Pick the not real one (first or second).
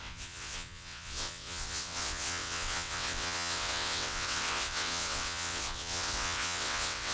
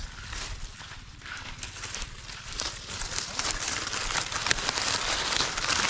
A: first